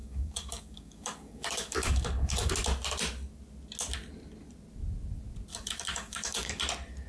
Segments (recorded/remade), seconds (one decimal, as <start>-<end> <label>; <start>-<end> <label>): 0.0-2.5 remade; 2.5-5.5 recorded; 5.5-6.6 remade; 6.6-7.1 recorded